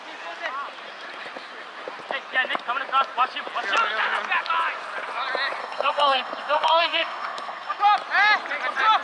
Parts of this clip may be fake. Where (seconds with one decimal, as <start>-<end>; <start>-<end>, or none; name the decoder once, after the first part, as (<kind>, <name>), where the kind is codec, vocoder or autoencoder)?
5.6-7.8 (codec, SNAC)